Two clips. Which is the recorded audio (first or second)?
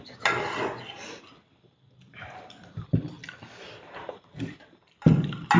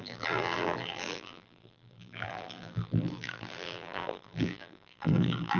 first